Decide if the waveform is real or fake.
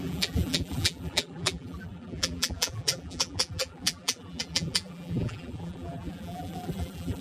fake